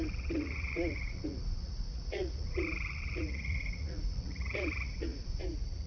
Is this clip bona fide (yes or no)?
no